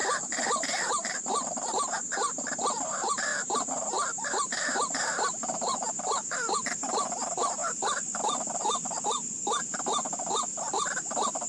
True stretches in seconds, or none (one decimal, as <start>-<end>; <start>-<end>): 7.6-9.6